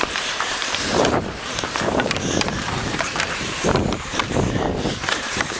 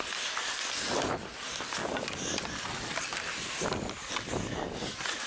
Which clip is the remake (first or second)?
first